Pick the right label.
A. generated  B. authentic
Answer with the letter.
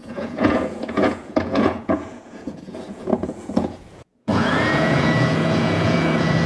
A